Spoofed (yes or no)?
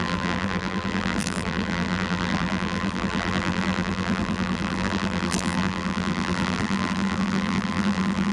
yes